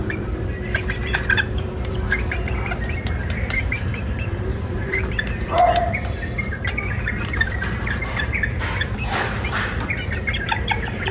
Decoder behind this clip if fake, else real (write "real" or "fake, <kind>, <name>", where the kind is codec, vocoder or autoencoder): fake, vocoder, BigVGAN v2